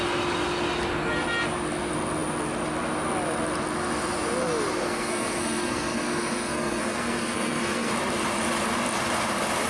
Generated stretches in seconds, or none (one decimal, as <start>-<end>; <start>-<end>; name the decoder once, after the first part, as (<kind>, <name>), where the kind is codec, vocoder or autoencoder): 4.8-7.9 (codec, SNAC)